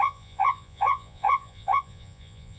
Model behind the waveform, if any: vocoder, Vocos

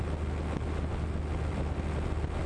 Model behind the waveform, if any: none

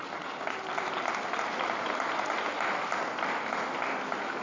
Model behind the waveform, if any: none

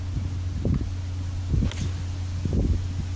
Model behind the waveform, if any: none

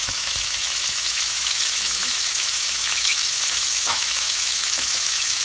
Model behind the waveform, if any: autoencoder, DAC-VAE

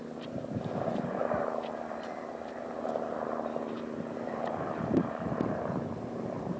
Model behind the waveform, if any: vocoder, BigVGAN v2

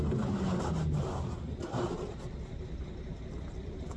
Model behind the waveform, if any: none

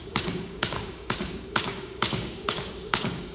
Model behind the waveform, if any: codec, DAC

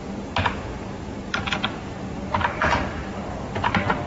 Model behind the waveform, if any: none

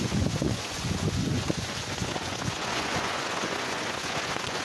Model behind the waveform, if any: vocoder, Vocos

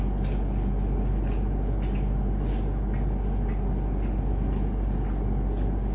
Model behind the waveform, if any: none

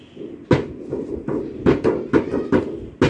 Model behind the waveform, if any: none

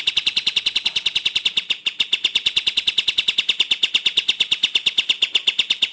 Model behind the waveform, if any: none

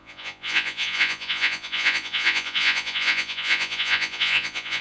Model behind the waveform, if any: vocoder, Vocos